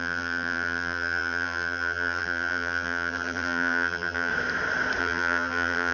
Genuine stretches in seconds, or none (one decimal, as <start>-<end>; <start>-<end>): 4.3-5.0